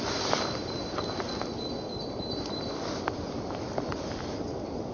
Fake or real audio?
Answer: real